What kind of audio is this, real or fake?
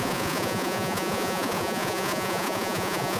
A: fake